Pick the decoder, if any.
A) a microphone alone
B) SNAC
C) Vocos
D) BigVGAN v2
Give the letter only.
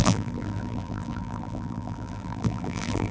D